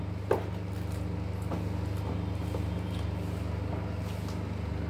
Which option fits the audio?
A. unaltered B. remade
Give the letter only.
A